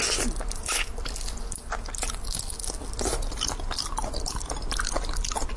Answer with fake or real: real